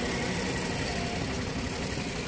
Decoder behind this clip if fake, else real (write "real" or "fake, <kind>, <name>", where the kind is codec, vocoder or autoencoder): real